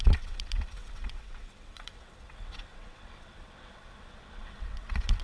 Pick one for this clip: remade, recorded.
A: remade